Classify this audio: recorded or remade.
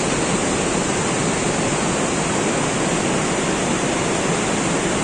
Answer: recorded